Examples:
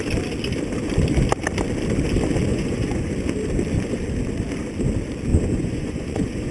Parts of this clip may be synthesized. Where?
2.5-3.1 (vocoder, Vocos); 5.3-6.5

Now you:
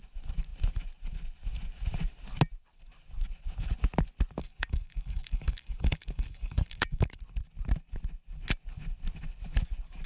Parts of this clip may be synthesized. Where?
4.4-7.2 (codec, DAC)

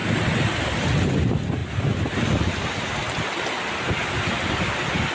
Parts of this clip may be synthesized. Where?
none